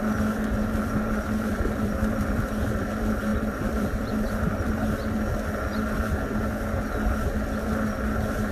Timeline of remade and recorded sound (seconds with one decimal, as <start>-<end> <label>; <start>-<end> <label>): 0.0-1.5 recorded; 1.5-2.6 remade; 2.6-3.3 recorded; 3.3-4.7 remade; 4.7-8.5 recorded